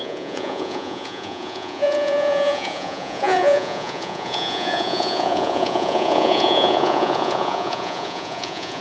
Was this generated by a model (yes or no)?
yes